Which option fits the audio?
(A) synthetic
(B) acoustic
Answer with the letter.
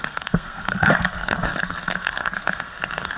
A